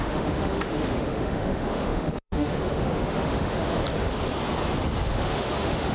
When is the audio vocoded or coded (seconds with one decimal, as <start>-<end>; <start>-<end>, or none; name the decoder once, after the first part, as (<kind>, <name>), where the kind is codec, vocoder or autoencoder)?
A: 0.0-3.8 (autoencoder, DAC-VAE); 5.1-5.9